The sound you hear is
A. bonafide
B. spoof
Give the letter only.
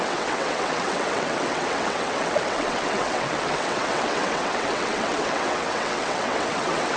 B